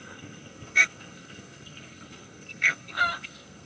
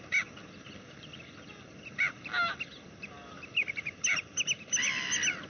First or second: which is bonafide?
second